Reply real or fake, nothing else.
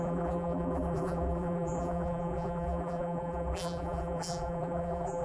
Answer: fake